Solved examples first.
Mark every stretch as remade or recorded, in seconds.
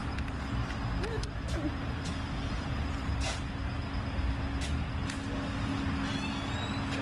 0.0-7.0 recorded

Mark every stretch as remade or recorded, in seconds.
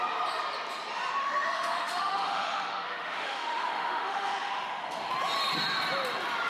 0.0-1.2 recorded; 1.2-5.1 remade; 5.1-6.5 recorded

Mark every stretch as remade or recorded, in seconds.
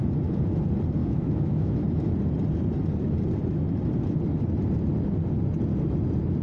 0.0-1.0 recorded; 1.0-1.8 remade; 1.8-6.4 recorded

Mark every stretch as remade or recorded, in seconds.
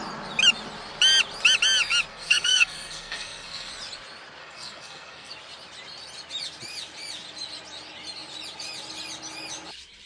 0.0-2.1 recorded; 2.1-3.7 remade; 3.7-4.4 recorded; 4.4-5.3 remade; 5.3-10.1 recorded